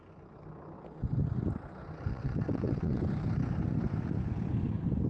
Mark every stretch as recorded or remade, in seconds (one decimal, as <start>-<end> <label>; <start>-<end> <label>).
0.0-2.1 recorded; 2.1-3.0 remade; 3.0-5.1 recorded